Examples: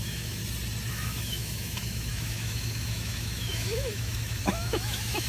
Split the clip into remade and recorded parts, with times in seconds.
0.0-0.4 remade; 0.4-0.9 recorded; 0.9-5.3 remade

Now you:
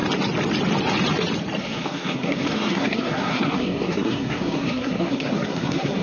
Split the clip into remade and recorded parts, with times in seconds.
0.0-1.6 recorded; 1.6-6.0 remade